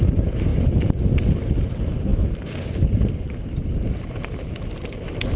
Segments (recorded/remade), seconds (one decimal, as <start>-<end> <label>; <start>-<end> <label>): 0.0-0.5 remade; 0.5-1.4 recorded; 1.4-5.4 remade